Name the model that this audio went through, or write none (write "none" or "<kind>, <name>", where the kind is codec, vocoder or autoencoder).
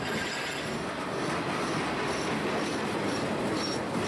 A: none